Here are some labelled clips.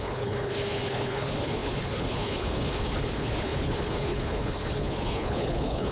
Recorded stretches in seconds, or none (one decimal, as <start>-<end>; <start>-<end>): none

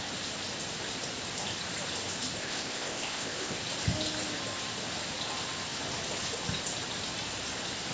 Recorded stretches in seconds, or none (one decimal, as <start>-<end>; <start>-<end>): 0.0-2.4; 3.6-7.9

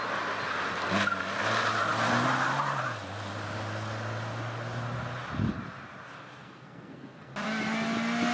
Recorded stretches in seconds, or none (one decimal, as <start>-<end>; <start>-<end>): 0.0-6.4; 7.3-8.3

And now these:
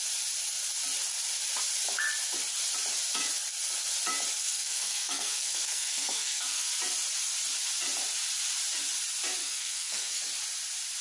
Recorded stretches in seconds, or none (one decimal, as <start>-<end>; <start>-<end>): 0.0-4.4; 6.7-9.4; 10.2-11.0